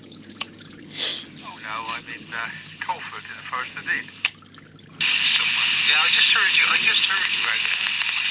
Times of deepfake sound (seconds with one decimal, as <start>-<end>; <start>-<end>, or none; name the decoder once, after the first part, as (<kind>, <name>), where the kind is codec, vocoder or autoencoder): 0.0-0.8 (vocoder, Vocos)